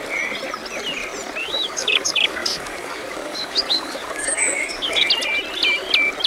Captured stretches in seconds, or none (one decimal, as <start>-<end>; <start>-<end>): 0.0-1.4; 5.1-6.3